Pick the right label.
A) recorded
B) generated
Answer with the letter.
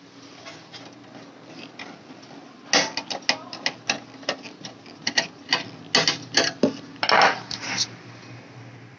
A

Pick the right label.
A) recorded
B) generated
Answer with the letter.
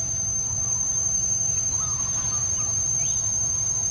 A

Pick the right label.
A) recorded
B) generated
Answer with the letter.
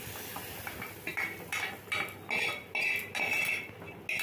A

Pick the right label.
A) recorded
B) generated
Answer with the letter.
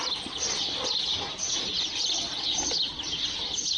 A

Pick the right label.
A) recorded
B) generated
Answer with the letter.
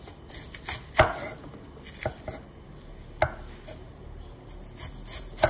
A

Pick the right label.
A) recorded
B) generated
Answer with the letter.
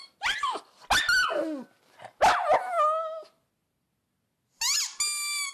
A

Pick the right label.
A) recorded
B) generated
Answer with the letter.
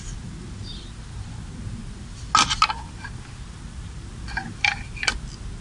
A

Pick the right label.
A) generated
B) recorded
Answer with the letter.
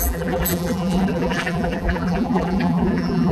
A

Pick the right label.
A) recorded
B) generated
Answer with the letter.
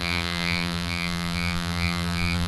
B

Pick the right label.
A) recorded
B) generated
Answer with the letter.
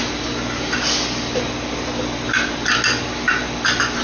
A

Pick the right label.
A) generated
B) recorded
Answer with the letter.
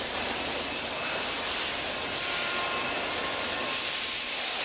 A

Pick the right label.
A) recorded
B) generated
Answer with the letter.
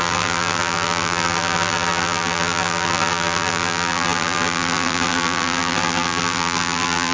B